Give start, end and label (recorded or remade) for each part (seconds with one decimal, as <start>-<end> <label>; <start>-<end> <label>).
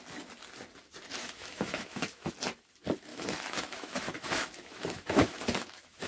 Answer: 0.0-1.2 recorded; 1.2-2.3 remade; 2.3-3.1 recorded; 3.1-6.1 remade